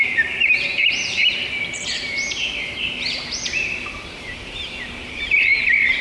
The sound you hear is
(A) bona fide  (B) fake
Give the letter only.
B